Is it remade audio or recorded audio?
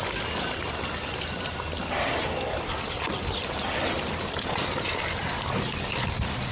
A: recorded